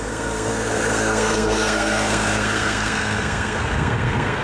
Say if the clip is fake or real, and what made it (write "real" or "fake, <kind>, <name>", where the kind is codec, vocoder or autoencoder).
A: fake, codec, SNAC